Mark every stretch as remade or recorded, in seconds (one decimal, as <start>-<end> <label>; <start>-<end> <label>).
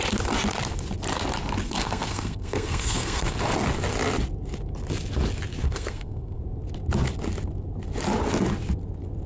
0.0-1.6 recorded; 1.6-3.4 remade; 3.4-5.6 recorded; 5.6-6.4 remade; 6.4-9.3 recorded